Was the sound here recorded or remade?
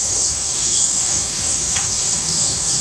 remade